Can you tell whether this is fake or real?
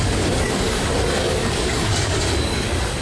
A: fake